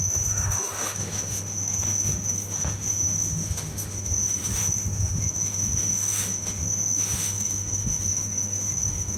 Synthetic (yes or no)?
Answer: yes